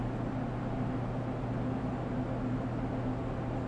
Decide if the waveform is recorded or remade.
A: recorded